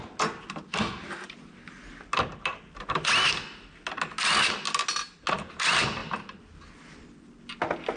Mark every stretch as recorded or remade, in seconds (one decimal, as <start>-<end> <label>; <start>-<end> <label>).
0.0-8.0 recorded